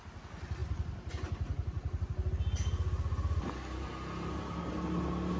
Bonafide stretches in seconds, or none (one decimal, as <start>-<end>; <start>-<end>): 0.0-5.4

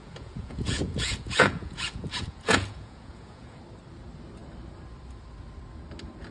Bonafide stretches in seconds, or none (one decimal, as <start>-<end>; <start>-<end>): 3.6-6.3

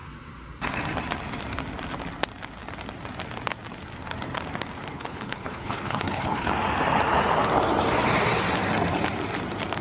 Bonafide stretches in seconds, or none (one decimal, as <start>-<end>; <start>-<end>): 0.0-4.9; 6.5-9.8

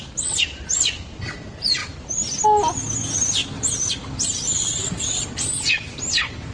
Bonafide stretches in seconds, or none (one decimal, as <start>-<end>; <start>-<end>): 0.0-3.4

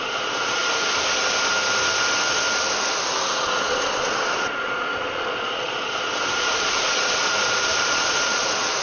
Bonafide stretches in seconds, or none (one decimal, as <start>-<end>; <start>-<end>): 0.6-3.3